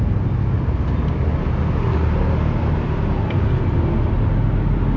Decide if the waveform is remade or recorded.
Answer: recorded